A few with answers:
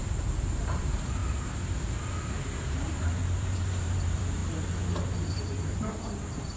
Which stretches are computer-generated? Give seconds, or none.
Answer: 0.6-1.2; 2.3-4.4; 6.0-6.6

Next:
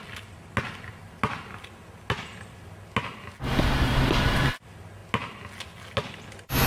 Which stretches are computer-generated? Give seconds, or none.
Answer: none

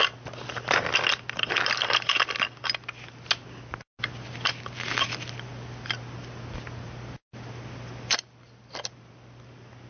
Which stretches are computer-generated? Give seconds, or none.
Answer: none